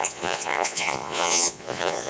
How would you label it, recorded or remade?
remade